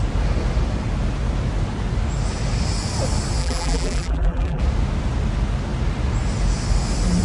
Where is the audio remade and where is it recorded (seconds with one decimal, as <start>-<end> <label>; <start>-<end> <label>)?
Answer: 0.0-3.4 recorded; 3.4-4.6 remade; 4.6-7.2 recorded